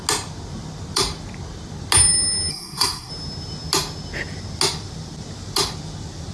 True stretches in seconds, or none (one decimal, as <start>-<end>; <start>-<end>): 0.0-2.5; 3.1-6.3